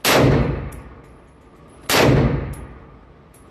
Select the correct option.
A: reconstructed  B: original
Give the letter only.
B